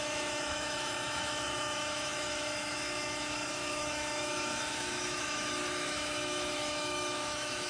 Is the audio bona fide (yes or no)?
no